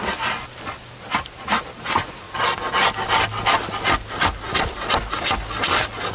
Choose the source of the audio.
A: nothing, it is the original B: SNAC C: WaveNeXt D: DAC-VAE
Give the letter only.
A